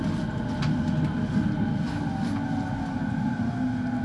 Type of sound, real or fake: real